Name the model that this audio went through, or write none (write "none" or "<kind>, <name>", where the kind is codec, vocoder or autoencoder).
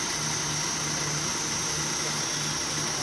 none